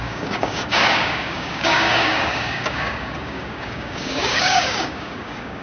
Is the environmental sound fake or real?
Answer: fake